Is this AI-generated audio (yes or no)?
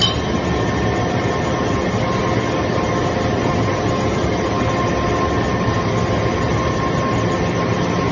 no